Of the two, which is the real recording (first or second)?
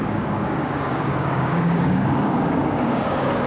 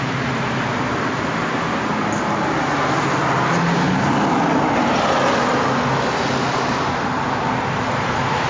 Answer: second